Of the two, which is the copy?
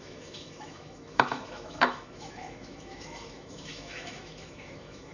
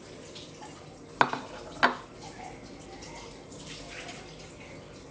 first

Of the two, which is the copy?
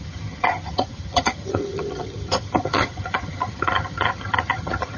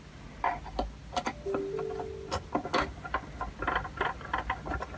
first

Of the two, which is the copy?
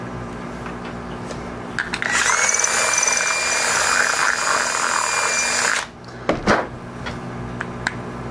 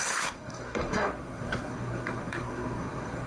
second